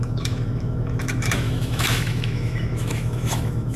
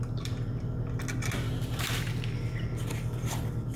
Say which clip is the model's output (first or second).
first